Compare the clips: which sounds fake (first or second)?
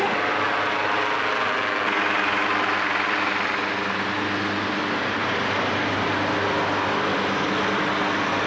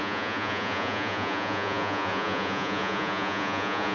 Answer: second